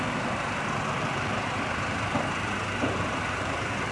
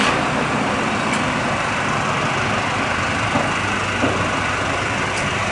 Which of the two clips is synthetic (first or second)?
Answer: first